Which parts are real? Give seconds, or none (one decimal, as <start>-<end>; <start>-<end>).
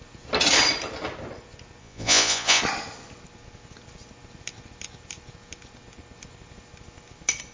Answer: 0.0-1.8; 2.6-7.5